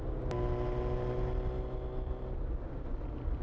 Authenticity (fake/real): real